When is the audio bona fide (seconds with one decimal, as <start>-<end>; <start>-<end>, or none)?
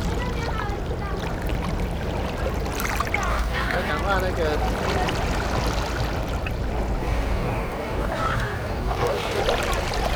0.0-3.3; 3.9-7.0; 9.4-10.2